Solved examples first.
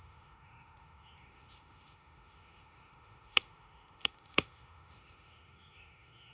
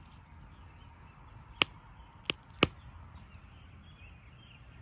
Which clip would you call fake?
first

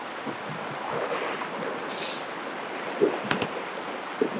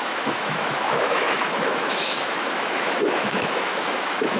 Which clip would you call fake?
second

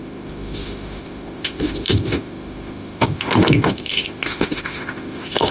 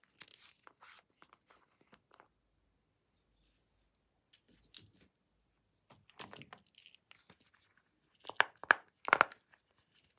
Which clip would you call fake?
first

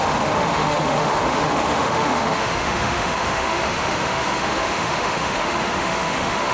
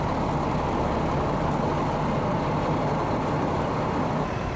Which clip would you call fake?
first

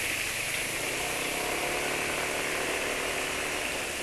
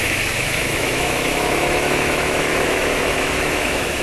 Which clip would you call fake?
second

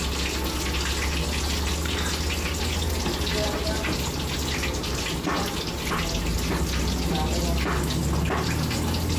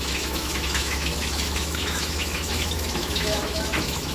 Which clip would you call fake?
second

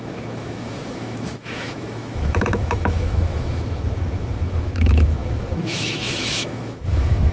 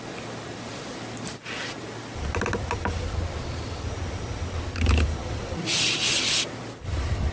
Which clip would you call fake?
first